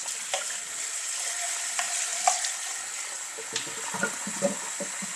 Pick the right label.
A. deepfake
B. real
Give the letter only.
B